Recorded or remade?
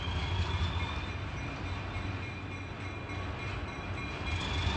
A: recorded